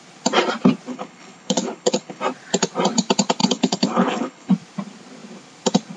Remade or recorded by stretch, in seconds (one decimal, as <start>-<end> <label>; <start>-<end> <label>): 0.0-0.9 recorded; 0.9-2.2 remade; 2.2-3.4 recorded; 3.4-4.5 remade; 4.5-6.0 recorded